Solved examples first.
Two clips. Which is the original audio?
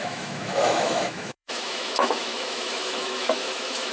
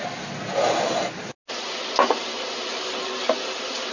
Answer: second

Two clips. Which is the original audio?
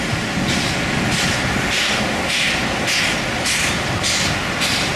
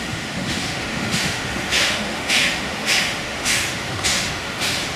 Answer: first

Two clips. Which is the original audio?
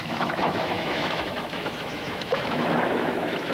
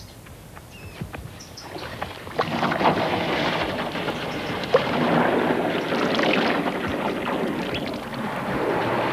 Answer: second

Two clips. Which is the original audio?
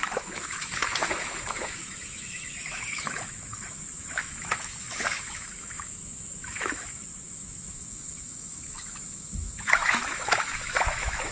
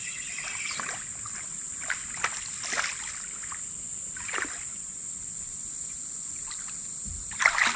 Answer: second